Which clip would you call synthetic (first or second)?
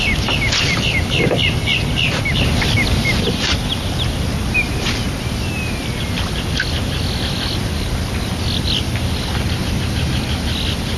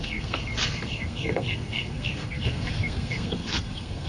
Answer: second